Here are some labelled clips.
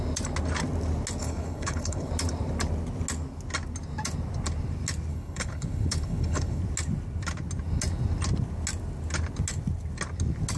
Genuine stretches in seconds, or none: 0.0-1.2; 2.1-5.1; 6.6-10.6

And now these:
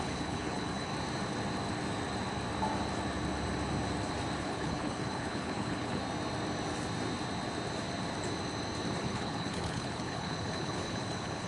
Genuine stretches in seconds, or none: 0.9-4.4; 6.0-9.0

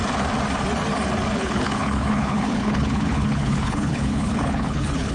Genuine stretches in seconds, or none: 0.0-1.3

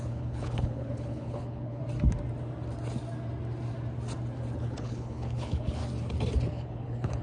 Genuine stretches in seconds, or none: 1.8-4.6; 5.8-6.5

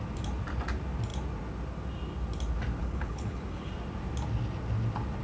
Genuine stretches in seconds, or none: 0.0-2.8; 3.7-5.2